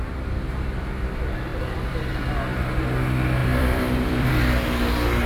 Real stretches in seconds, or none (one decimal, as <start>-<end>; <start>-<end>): 0.0-3.4; 4.3-5.3